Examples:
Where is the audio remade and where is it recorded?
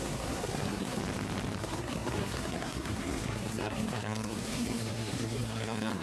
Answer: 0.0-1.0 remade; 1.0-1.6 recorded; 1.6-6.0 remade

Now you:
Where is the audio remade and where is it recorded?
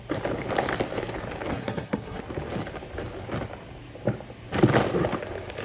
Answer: 0.0-1.5 recorded; 1.5-2.2 remade; 2.2-5.6 recorded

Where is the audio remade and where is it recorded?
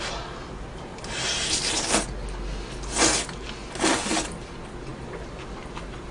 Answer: 0.0-6.1 recorded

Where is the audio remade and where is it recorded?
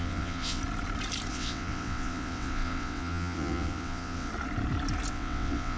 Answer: 0.0-0.6 remade; 0.6-1.3 recorded; 1.3-4.3 remade; 4.3-5.1 recorded; 5.1-5.8 remade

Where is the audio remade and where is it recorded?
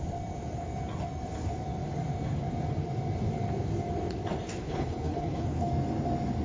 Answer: 0.0-4.6 recorded; 4.6-5.7 remade; 5.7-6.4 recorded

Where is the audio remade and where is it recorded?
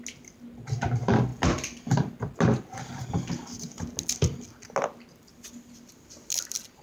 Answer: 0.0-6.8 recorded